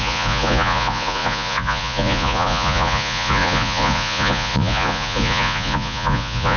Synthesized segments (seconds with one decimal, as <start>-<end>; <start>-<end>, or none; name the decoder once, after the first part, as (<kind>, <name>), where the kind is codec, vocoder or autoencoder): 0.0-6.6 (vocoder, Vocos)